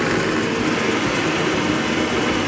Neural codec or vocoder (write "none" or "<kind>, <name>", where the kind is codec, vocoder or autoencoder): none